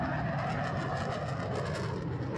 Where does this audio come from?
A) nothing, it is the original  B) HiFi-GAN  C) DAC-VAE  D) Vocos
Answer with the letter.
A